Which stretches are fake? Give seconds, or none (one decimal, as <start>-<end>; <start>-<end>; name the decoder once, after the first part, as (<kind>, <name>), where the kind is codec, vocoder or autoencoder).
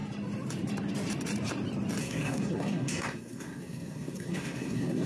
2.0-5.1 (codec, SNAC)